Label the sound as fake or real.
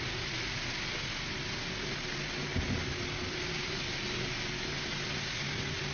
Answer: real